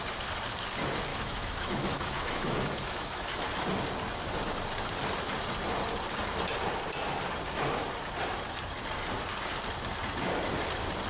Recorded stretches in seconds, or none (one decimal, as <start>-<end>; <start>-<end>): 0.0-1.1; 3.7-11.1